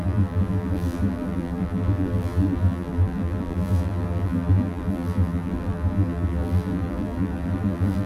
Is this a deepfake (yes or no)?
yes